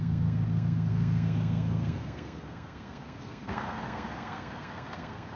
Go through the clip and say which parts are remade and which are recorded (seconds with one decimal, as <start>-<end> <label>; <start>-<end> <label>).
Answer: 0.0-5.4 remade

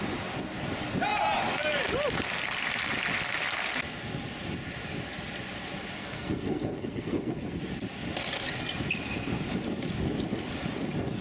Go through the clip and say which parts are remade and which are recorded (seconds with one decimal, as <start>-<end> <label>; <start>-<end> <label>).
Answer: 0.0-6.0 recorded; 6.0-7.6 remade; 7.6-11.2 recorded